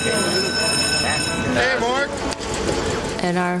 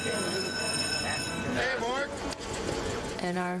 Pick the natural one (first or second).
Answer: first